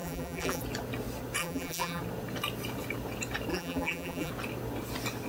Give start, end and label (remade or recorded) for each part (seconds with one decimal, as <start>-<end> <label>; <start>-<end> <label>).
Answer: 0.0-0.6 remade; 0.6-1.4 recorded; 1.4-2.0 remade; 2.0-3.5 recorded; 3.5-4.3 remade; 4.3-5.3 recorded